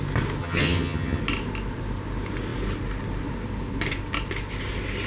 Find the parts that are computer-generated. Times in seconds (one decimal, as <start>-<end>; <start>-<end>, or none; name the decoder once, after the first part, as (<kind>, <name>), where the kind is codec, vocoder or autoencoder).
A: 0.4-1.2 (vocoder, HiFi-GAN)